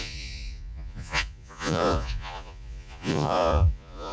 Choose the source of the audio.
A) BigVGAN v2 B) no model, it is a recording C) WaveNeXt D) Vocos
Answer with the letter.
D